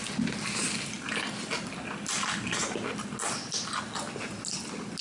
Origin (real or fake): real